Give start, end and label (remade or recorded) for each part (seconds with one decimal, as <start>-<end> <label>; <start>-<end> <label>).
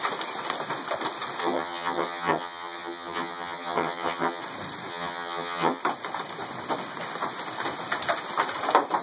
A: 0.0-1.4 recorded; 1.4-4.4 remade; 4.4-4.9 recorded; 4.9-5.8 remade; 5.8-9.0 recorded